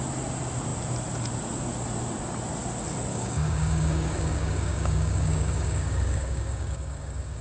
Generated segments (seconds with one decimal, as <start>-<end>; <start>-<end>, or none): 3.1-7.4